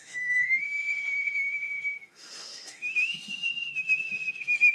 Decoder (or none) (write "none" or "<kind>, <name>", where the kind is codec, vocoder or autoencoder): autoencoder, DAC-VAE